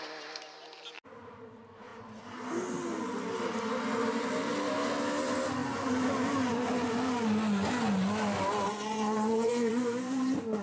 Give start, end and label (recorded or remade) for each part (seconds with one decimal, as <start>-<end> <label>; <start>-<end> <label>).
0.0-8.7 recorded; 8.7-9.7 remade; 9.7-10.6 recorded

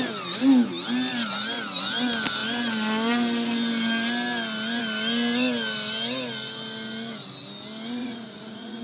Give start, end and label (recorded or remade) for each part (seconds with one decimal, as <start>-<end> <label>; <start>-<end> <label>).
0.0-8.0 recorded; 8.0-8.8 remade